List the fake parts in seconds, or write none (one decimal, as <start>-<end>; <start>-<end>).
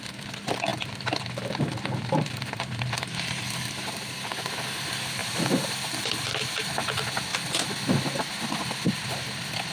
5.2-6.7